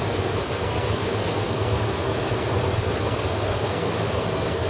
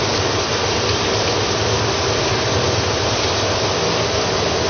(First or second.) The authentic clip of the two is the second